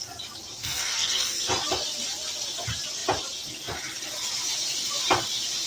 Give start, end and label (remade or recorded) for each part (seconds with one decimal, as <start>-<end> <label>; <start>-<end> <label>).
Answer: 0.0-0.6 recorded; 0.6-1.5 remade; 1.5-5.7 recorded